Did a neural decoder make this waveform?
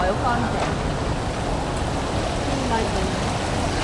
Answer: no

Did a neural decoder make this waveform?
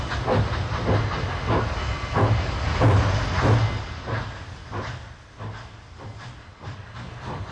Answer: no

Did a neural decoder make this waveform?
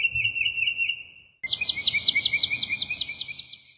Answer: no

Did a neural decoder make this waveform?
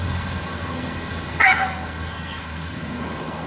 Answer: yes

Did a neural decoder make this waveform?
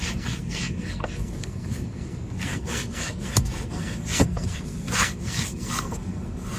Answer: yes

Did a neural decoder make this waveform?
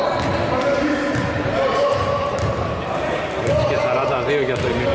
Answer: no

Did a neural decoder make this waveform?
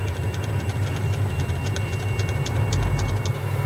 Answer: no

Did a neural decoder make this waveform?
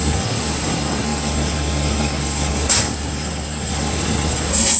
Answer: yes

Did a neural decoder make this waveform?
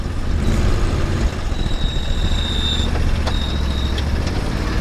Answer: no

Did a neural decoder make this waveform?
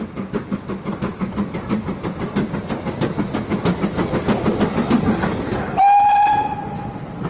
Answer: no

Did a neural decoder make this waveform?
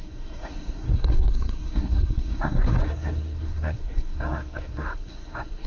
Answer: yes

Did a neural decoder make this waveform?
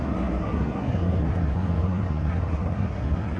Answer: yes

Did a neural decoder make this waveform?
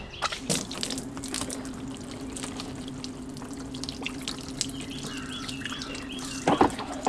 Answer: no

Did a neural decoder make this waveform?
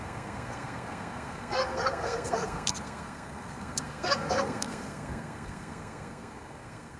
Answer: yes